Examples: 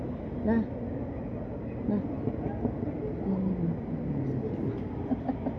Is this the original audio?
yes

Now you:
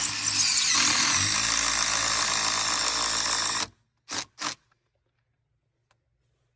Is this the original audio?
yes